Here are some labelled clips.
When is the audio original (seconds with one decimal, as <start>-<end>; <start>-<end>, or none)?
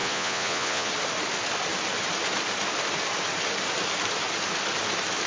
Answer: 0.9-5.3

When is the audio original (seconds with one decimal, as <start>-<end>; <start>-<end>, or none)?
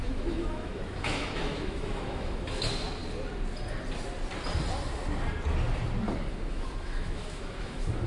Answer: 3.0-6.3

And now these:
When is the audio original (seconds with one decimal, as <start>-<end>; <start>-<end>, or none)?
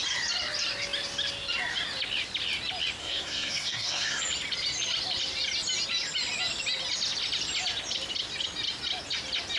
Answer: 0.0-3.0; 4.2-9.6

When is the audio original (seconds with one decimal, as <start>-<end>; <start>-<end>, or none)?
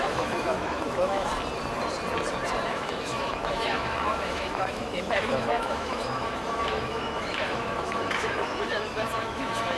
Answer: 1.3-2.7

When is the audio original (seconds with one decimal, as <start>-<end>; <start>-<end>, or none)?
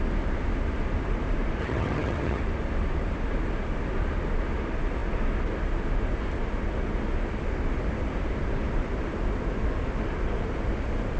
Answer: 0.0-1.6; 2.4-11.2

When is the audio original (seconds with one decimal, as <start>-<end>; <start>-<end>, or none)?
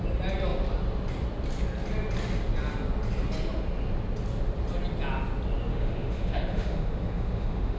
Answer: 0.0-5.7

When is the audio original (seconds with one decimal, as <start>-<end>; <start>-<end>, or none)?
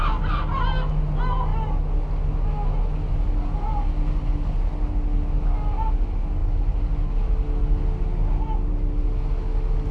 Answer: 0.0-9.9